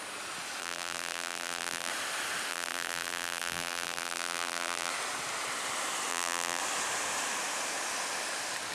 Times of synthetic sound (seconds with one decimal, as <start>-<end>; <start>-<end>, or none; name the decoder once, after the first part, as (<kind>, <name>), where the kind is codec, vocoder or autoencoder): 0.6-1.9 (vocoder, BigVGAN v2); 2.5-4.9; 6.1-6.6